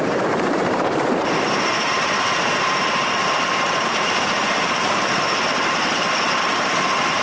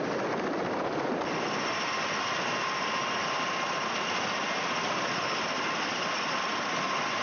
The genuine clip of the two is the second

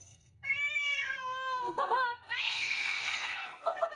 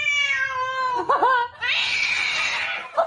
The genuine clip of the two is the second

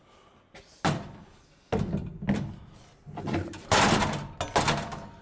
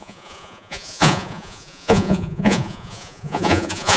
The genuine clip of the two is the first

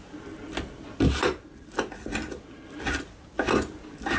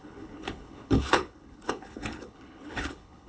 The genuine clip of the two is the first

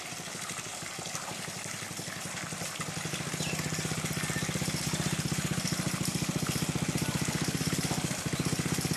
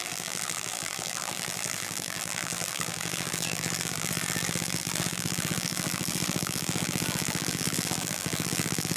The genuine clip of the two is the first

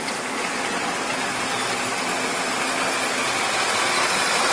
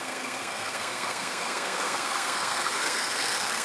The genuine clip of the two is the first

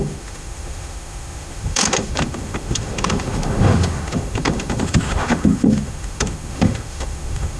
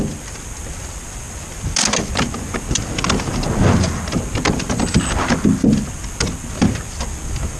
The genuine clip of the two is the second